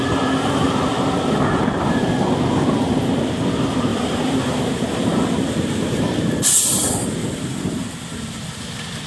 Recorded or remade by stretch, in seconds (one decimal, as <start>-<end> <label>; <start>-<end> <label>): 0.0-3.9 recorded; 3.9-6.0 remade; 6.0-7.2 recorded; 7.2-8.6 remade; 8.6-9.1 recorded